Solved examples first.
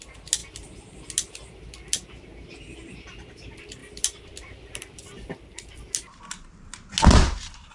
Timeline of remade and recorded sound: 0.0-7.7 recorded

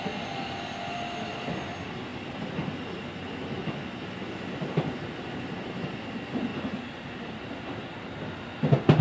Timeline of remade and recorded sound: 0.0-9.0 recorded

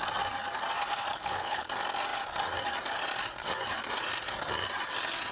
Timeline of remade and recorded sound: 0.0-1.1 recorded; 1.1-1.7 remade; 1.7-5.3 recorded

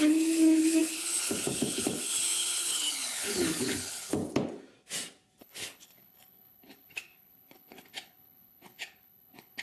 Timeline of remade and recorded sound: 0.0-4.2 remade; 4.2-5.4 recorded; 5.4-9.6 remade